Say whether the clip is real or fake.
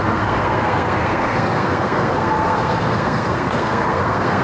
fake